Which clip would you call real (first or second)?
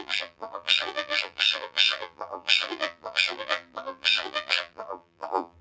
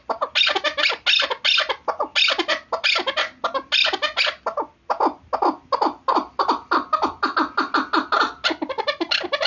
second